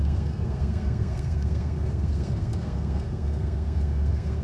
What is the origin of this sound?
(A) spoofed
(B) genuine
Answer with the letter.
A